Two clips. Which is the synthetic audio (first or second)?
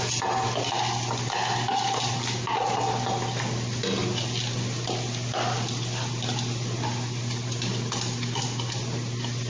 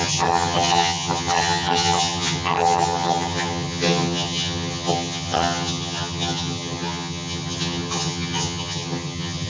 second